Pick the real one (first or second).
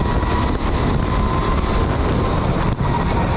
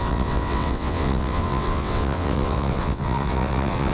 first